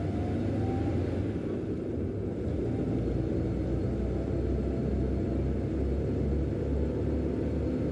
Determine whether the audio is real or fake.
real